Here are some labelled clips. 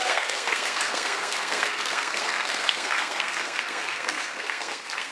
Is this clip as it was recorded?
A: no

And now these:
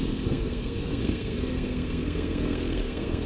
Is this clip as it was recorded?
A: no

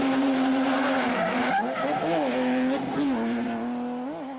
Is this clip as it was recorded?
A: yes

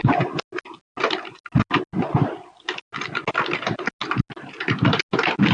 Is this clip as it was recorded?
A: yes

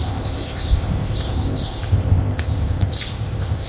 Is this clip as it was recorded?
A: no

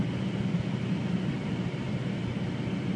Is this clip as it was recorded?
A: yes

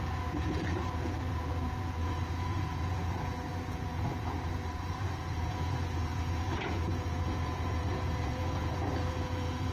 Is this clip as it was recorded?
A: no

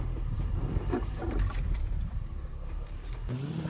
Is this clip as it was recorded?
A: no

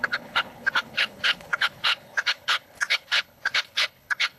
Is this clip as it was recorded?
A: no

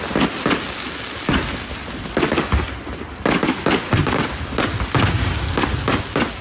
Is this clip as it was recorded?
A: yes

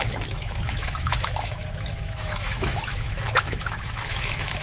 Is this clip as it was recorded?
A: no